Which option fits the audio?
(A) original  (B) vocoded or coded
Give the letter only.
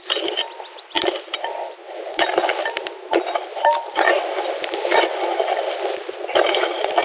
B